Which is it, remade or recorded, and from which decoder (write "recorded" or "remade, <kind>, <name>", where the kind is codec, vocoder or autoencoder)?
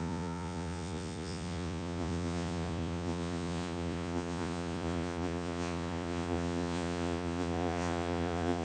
remade, vocoder, Vocos